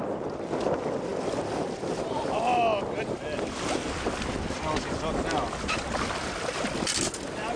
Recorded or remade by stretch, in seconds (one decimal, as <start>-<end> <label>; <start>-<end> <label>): 0.0-7.6 recorded